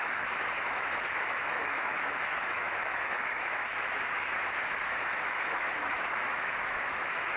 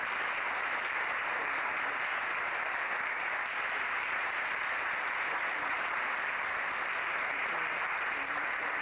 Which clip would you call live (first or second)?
second